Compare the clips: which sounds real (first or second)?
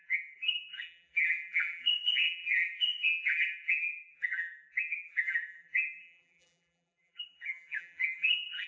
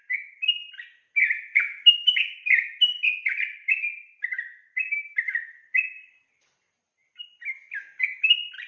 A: second